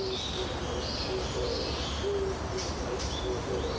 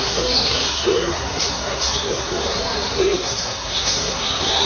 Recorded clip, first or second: first